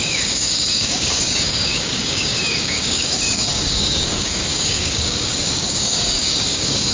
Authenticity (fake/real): fake